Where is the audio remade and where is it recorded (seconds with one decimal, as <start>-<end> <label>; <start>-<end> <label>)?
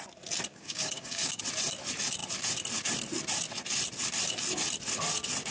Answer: 0.0-0.5 recorded; 0.5-1.4 remade; 1.4-5.5 recorded